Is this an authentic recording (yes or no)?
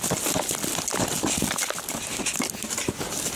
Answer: yes